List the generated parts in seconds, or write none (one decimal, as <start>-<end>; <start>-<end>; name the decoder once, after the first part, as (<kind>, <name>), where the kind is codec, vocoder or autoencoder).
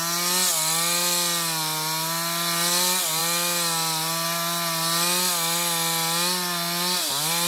none